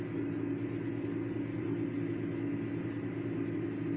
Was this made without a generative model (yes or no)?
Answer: yes